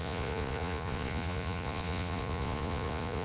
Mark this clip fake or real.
fake